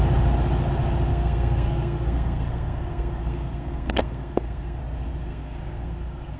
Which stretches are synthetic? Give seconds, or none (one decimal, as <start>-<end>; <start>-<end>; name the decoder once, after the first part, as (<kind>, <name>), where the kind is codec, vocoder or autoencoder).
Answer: 1.1-4.8 (codec, SNAC); 5.3-6.4